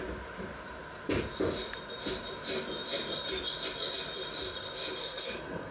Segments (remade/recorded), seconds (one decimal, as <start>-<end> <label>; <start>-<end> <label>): 0.0-5.0 recorded; 5.0-5.7 remade